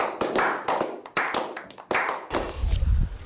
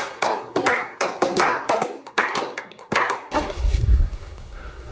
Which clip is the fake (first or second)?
second